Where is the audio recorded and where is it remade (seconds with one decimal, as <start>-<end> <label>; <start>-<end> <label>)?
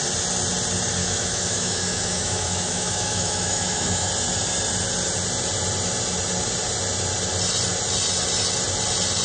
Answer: 0.0-1.0 recorded; 1.0-4.1 remade; 4.1-9.2 recorded